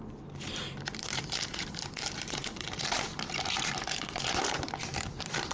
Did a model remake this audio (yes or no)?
yes